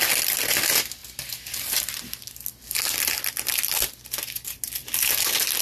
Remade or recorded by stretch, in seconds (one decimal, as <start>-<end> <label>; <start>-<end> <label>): 0.0-5.6 recorded